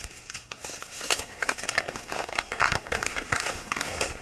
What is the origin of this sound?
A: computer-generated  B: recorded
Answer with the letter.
A